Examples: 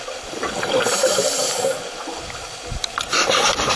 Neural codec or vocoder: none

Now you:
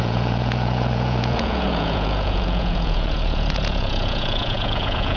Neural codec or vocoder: vocoder, Vocos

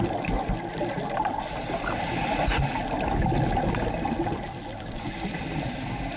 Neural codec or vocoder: none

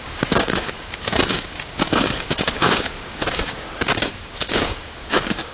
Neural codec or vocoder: codec, DAC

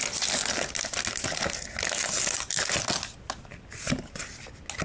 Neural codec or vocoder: none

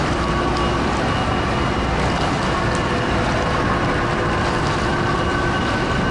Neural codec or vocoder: none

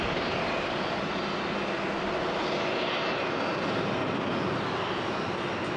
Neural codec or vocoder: none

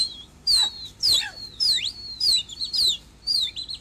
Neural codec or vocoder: vocoder, BigVGAN v2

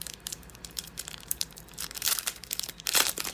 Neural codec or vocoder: vocoder, BigVGAN v2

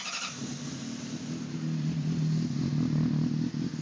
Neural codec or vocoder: none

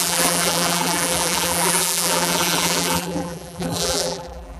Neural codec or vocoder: vocoder, BigVGAN v2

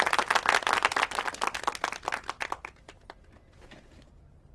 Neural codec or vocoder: none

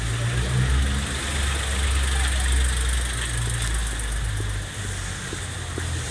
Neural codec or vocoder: none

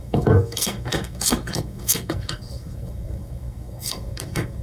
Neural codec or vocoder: codec, SNAC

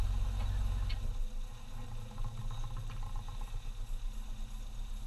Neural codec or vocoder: none